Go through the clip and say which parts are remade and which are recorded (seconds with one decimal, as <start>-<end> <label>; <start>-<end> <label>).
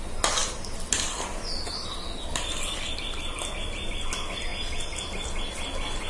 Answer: 0.0-6.1 recorded